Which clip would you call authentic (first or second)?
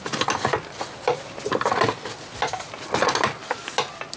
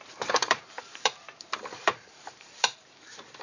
first